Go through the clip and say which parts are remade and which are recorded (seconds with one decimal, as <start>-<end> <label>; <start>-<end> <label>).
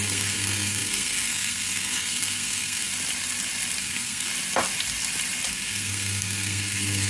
0.0-2.9 remade; 2.9-3.8 recorded; 3.8-4.3 remade; 4.3-5.5 recorded; 5.5-7.1 remade